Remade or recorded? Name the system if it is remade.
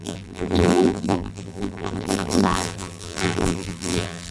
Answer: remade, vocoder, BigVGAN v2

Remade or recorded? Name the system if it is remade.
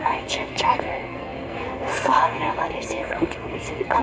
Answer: remade, codec, SNAC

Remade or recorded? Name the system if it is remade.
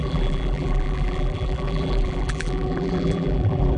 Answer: remade, vocoder, BigVGAN v2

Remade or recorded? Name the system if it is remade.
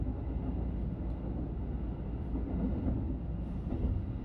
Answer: recorded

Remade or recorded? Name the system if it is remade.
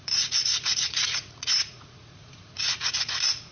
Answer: remade, vocoder, Vocos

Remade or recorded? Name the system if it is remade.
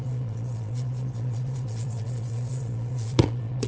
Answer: remade, vocoder, Vocos